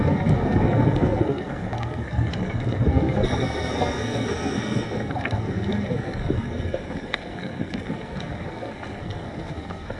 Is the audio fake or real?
fake